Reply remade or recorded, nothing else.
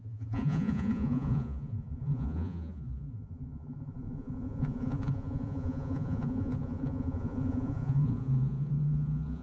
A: remade